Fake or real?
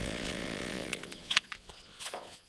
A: fake